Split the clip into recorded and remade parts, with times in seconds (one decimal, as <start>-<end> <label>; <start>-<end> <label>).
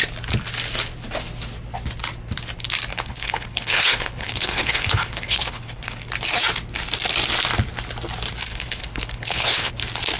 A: 0.0-2.9 recorded; 2.9-6.0 remade; 6.0-8.5 recorded; 8.5-9.7 remade; 9.7-10.2 recorded